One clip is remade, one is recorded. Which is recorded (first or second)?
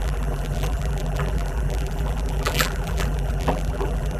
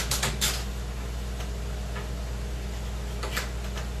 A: second